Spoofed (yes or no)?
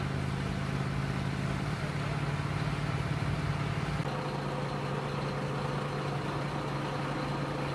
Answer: no